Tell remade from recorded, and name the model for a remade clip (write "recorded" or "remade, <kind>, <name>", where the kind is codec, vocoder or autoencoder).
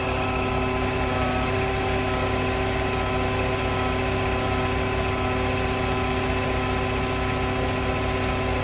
recorded